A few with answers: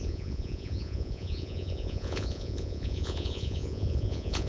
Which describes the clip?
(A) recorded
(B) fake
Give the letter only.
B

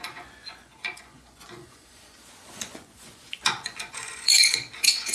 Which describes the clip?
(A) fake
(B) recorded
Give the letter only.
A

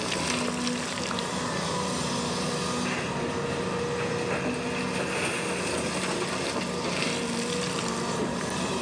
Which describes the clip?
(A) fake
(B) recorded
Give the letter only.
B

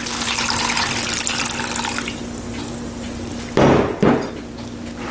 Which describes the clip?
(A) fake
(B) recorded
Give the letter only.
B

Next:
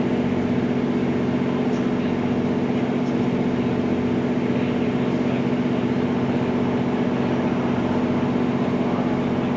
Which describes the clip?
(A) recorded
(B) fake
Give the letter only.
A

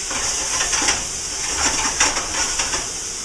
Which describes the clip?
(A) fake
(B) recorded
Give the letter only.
B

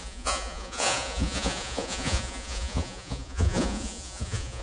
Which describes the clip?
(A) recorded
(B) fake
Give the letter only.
B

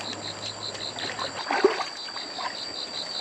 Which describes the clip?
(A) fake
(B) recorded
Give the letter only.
B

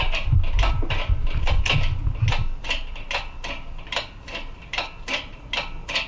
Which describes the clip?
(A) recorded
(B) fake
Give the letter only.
A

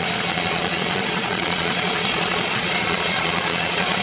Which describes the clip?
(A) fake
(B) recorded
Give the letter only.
A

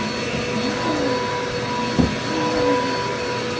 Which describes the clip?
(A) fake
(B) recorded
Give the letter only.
B